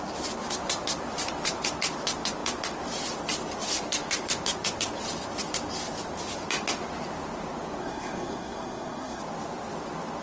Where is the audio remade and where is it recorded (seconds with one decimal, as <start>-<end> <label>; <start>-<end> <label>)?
0.0-7.8 recorded; 7.8-9.2 remade; 9.2-10.2 recorded